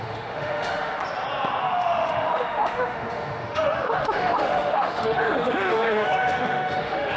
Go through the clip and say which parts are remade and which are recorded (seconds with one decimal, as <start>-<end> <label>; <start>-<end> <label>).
0.0-1.0 remade; 1.0-1.6 recorded; 1.6-7.2 remade